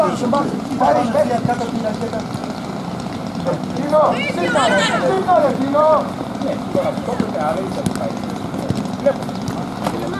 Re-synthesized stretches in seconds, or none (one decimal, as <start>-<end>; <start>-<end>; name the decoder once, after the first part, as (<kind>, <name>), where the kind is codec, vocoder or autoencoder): 2.4-7.3 (vocoder, BigVGAN v2)